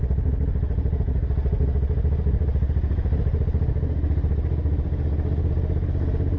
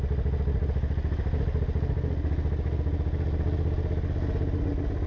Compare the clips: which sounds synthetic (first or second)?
first